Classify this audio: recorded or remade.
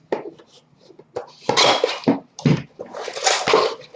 recorded